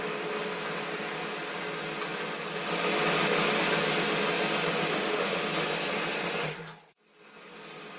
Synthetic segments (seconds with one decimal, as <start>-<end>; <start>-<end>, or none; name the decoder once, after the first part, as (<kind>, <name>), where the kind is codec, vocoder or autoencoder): 4.9-5.4 (autoencoder, DAC-VAE)